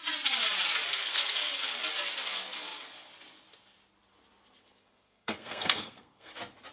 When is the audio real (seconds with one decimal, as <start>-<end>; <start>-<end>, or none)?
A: 0.0-1.0; 1.5-4.6; 6.3-6.7